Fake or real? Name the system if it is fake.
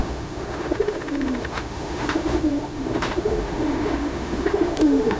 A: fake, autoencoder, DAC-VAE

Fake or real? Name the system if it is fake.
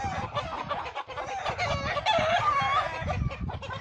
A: real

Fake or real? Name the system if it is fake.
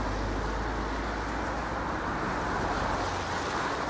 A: real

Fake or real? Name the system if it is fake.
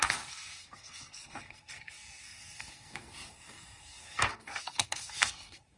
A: fake, codec, SNAC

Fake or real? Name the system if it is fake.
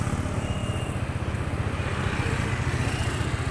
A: real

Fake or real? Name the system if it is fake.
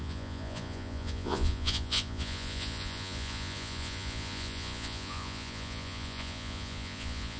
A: fake, vocoder, Vocos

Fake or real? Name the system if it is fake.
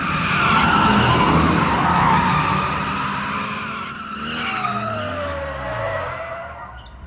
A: real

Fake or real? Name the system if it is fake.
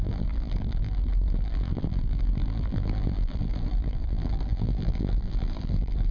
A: fake, vocoder, BigVGAN v2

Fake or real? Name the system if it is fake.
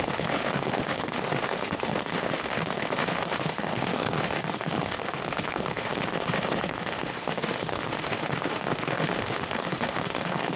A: fake, autoencoder, DAC-VAE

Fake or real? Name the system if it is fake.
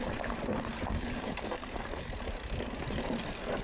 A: fake, vocoder, BigVGAN v2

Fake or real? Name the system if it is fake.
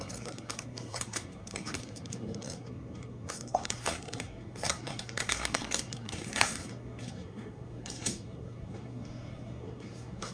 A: fake, codec, SNAC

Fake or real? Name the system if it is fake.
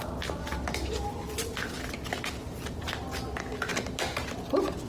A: real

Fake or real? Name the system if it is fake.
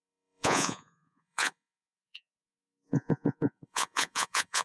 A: fake, vocoder, Vocos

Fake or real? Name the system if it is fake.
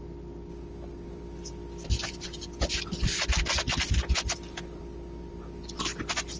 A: real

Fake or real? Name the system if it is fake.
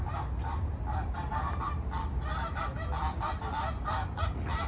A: real